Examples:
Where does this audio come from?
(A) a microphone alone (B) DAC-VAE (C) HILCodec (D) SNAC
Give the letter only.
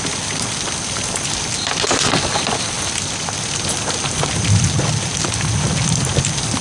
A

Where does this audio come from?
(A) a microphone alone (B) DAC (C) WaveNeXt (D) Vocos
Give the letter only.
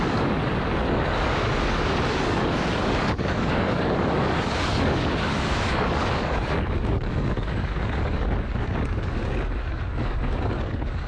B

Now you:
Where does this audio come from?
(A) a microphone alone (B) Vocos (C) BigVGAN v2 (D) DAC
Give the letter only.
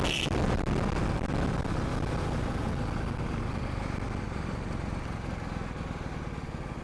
A